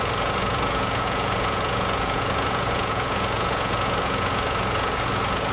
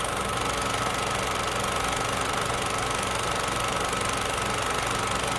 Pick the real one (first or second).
second